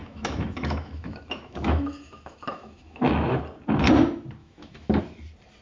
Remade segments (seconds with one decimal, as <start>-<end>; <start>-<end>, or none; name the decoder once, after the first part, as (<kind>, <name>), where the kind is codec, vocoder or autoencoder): 0.0-3.4 (autoencoder, DAC-VAE); 4.4-5.0